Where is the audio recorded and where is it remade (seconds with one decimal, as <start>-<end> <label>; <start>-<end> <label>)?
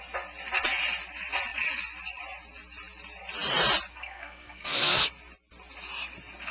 0.0-3.9 recorded; 3.9-5.1 remade; 5.1-6.5 recorded